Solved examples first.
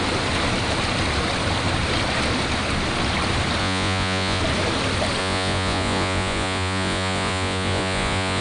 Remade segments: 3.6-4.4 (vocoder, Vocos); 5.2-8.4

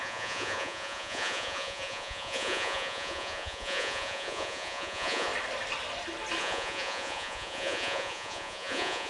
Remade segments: 0.0-5.3 (vocoder, Vocos); 6.4-9.1

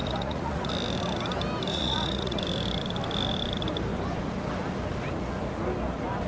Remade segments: 0.0-0.7 (vocoder, Vocos); 1.7-2.4

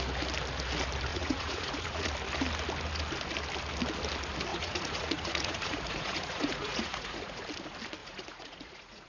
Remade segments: 1.1-2.1 (vocoder, Vocos); 4.5-7.4; 8.0-9.1

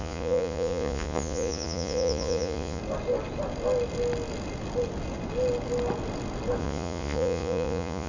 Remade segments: 0.0-2.8 (vocoder, Vocos); 6.6-8.1

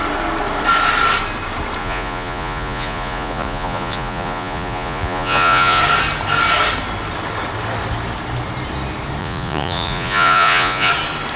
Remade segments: 1.8-5.8 (vocoder, Vocos); 9.2-10.9